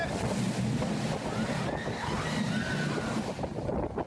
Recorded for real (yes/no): yes